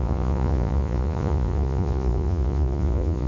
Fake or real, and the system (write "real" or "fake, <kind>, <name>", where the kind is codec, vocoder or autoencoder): fake, vocoder, Vocos